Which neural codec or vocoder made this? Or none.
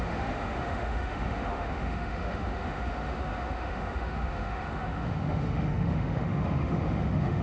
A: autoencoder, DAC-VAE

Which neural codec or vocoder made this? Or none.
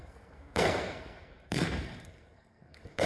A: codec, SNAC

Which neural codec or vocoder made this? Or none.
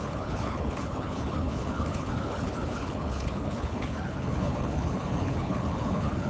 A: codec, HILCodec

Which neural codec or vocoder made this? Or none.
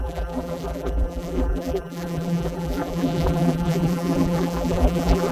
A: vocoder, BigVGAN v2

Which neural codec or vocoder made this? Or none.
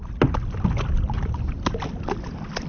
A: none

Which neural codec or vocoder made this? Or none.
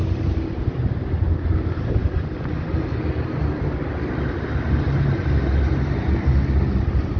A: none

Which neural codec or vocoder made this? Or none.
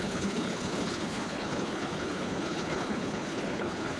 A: codec, HILCodec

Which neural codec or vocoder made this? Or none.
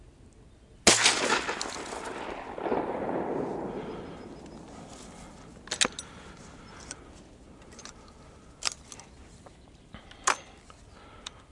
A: none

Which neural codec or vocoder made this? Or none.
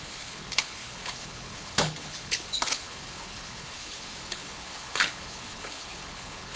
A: codec, HILCodec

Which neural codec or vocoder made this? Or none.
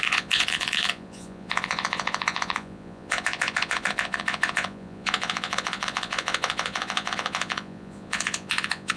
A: vocoder, Vocos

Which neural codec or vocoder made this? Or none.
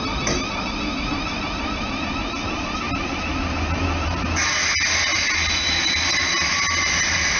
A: none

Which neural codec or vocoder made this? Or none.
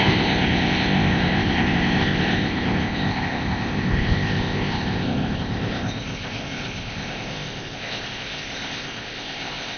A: codec, ZipCodec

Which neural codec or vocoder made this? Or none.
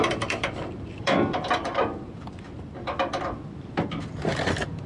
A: vocoder, BigVGAN v2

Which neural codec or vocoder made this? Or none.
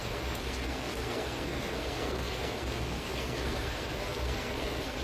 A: codec, SNAC